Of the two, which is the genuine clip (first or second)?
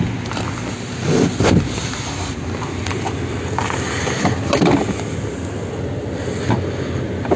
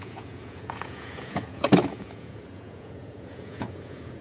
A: first